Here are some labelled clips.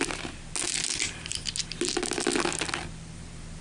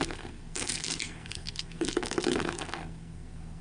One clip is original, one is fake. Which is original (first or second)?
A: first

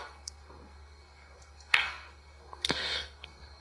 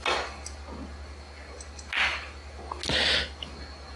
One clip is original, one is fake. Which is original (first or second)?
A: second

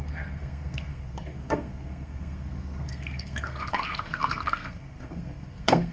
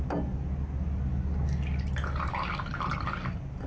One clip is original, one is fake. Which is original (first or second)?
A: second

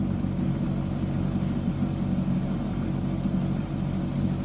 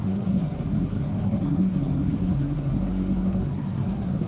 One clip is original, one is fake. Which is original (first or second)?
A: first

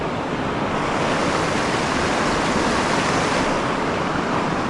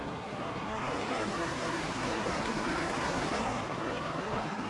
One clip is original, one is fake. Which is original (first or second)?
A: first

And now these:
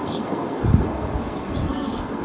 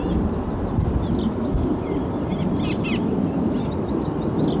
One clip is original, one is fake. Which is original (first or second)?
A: second